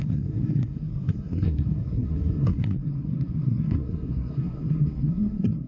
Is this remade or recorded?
remade